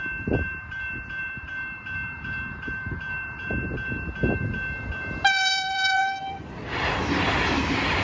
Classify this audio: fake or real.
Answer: fake